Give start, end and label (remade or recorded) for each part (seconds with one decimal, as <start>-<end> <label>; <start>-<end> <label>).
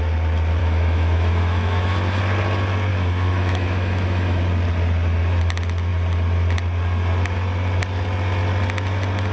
0.0-0.6 recorded; 0.6-2.2 remade; 2.2-2.9 recorded; 2.9-4.4 remade; 4.4-9.3 recorded